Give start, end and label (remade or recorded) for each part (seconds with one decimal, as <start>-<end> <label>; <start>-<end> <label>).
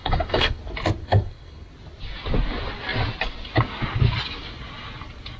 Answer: 0.0-0.6 remade; 0.6-1.0 recorded; 1.0-1.7 remade; 1.7-5.4 recorded